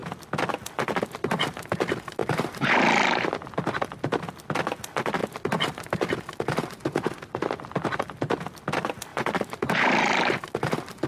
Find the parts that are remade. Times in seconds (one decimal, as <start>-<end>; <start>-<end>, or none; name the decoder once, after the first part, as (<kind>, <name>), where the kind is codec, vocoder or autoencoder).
2.2-2.7 (vocoder, BigVGAN v2); 9.1-10.4